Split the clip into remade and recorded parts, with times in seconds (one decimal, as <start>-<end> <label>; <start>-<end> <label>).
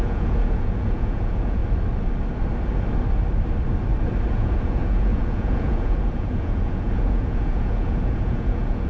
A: 0.0-1.6 remade; 1.6-4.3 recorded; 4.3-8.9 remade